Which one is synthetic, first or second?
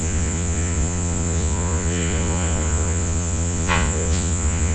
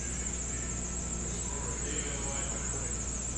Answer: first